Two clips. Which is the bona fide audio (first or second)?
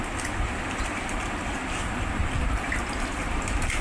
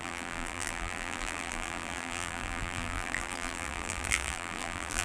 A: first